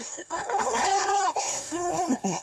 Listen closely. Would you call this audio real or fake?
fake